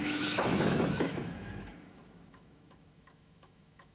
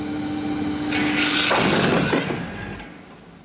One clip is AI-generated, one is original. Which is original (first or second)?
second